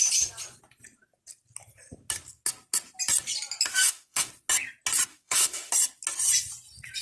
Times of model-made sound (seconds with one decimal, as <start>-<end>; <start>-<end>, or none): 3.8-4.3; 5.1-5.7